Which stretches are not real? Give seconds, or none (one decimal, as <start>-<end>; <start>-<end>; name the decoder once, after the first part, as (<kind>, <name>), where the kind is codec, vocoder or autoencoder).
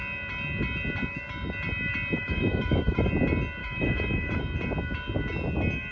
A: 2.2-3.1 (autoencoder, DAC-VAE); 3.6-4.4